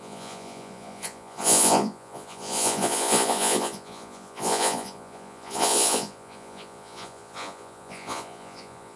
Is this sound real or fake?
fake